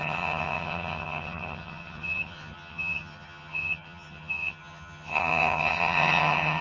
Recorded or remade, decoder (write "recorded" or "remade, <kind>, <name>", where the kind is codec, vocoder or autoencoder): remade, vocoder, HiFi-GAN